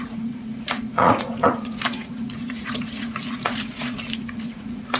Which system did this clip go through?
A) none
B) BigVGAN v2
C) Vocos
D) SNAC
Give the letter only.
C